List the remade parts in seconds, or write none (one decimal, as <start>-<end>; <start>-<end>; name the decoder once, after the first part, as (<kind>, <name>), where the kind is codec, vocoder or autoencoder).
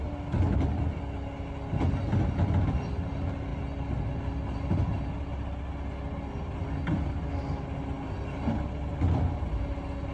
none